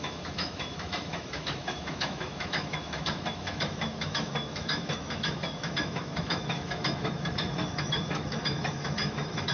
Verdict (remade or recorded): remade